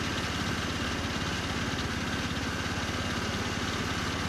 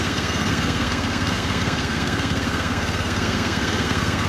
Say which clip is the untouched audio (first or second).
first